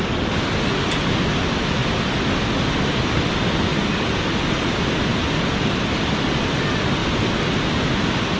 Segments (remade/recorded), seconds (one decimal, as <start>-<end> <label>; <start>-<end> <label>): 0.0-3.7 recorded; 3.7-4.2 remade; 4.2-8.4 recorded